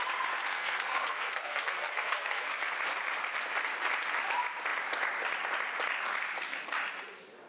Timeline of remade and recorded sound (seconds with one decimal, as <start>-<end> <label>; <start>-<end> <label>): 0.0-0.5 recorded; 0.5-2.7 remade; 2.7-7.5 recorded